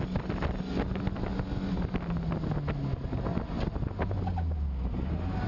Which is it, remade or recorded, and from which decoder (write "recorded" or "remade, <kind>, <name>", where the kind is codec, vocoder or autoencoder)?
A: recorded